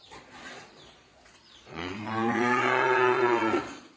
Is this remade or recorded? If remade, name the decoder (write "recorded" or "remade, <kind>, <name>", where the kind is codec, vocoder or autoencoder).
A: remade, vocoder, Vocos